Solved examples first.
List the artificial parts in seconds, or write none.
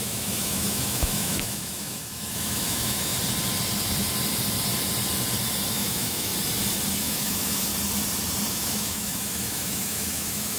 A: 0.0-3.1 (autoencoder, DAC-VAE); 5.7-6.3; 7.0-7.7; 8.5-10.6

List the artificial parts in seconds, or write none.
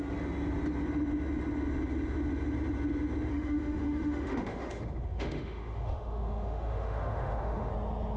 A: 3.3-7.7 (autoencoder, DAC-VAE)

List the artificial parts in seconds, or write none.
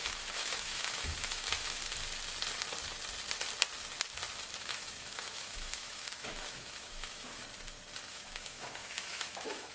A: 0.0-1.8 (autoencoder, DAC-VAE); 4.6-7.4; 8.1-9.7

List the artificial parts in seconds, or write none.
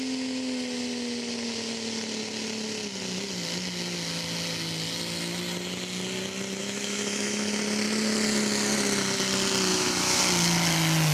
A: 6.6-7.6 (autoencoder, DAC-VAE); 9.7-10.2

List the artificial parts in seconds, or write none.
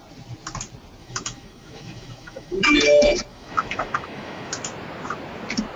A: 1.0-2.7 (autoencoder, DAC-VAE); 3.3-4.5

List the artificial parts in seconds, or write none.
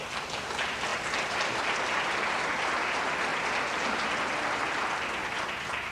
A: none